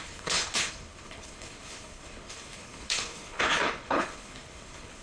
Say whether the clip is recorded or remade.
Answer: remade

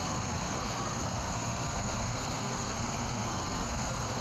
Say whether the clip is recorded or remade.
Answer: remade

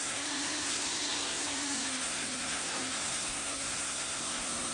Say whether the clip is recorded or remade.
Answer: remade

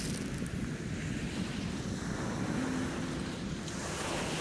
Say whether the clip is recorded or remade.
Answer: recorded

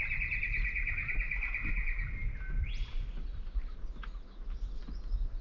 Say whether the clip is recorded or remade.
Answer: recorded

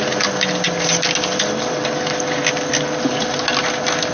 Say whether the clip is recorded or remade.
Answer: recorded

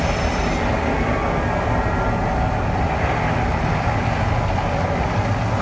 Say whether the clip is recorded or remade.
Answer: recorded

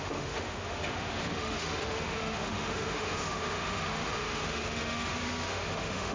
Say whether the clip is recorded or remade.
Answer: remade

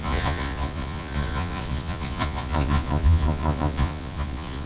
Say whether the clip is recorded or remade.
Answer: remade